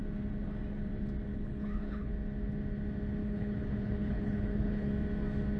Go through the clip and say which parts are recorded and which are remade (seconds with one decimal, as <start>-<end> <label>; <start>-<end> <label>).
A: 0.0-1.3 recorded; 1.3-2.1 remade; 2.1-3.2 recorded; 3.2-4.9 remade; 4.9-5.6 recorded